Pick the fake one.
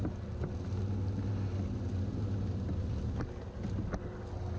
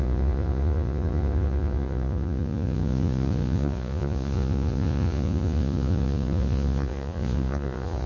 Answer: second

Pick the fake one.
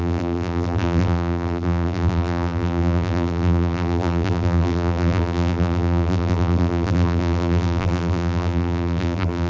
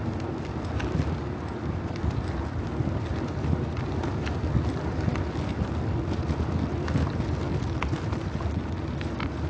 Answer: first